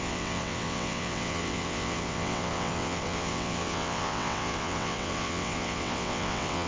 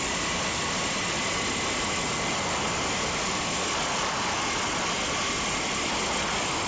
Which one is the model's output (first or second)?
first